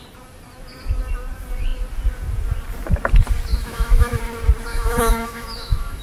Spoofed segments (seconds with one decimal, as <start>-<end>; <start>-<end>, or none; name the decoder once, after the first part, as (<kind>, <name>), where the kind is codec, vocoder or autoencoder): 3.5-4.2 (autoencoder, DAC-VAE); 4.7-6.0